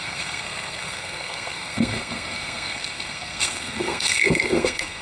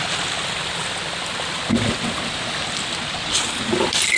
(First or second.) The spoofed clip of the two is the first